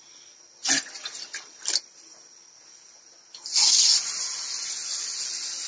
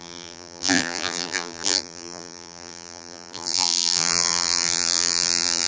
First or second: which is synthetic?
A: second